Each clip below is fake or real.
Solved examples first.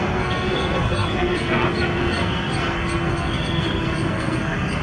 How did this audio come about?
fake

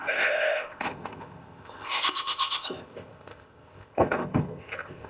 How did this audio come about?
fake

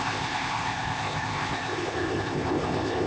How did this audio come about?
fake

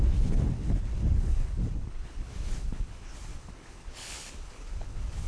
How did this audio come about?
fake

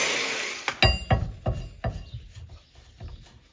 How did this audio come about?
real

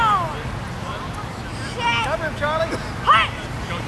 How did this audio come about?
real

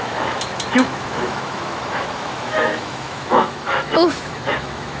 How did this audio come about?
fake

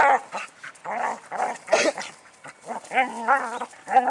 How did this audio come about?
real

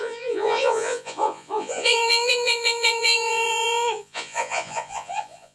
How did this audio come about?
fake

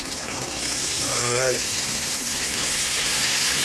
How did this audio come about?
fake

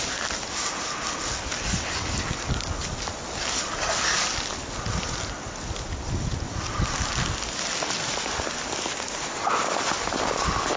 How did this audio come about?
real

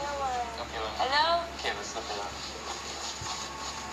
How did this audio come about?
real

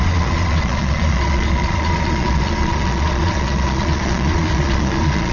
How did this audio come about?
fake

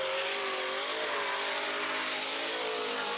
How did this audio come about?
real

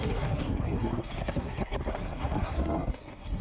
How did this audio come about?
fake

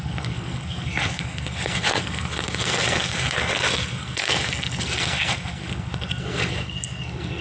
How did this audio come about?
fake